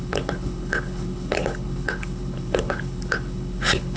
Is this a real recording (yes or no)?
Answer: no